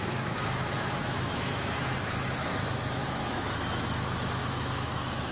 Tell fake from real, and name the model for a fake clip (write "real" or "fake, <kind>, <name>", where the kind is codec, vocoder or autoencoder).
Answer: fake, autoencoder, DAC-VAE